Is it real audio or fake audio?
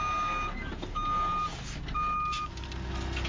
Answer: real